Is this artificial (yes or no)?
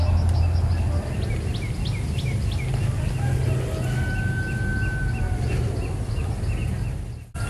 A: no